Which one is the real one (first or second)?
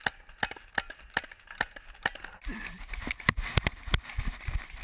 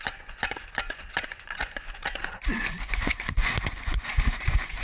first